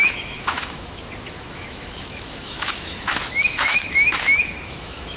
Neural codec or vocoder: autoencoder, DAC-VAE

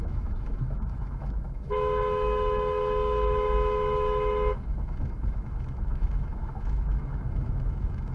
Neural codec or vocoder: autoencoder, DAC-VAE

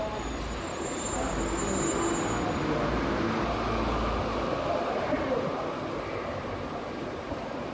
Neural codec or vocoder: none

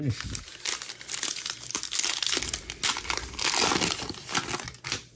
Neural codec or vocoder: none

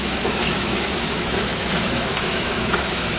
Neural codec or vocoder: autoencoder, DAC-VAE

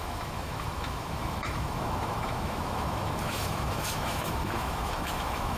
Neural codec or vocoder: autoencoder, DAC-VAE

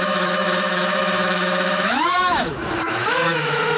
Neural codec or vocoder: autoencoder, DAC-VAE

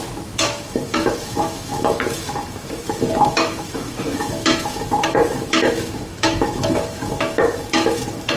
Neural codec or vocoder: autoencoder, DAC-VAE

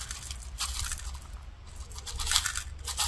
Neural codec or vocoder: none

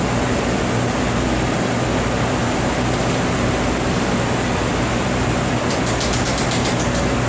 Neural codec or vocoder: none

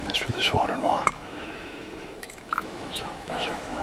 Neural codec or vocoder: autoencoder, DAC-VAE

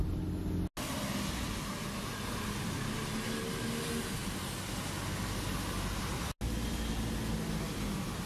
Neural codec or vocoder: none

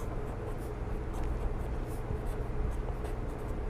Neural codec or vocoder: none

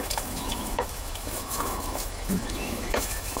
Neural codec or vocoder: autoencoder, DAC-VAE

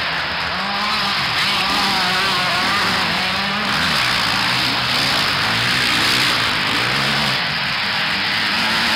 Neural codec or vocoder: none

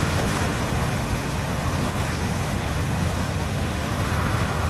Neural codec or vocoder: autoencoder, DAC-VAE